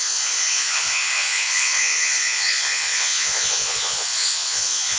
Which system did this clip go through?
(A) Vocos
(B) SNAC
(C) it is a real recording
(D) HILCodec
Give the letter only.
A